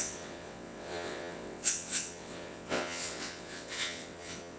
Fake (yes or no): yes